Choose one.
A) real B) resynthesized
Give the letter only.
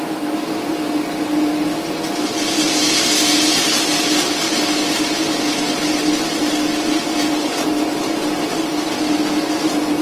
A